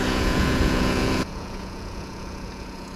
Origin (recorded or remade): remade